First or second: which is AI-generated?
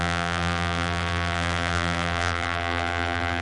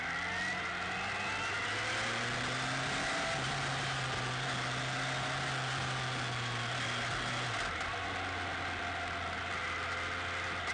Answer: first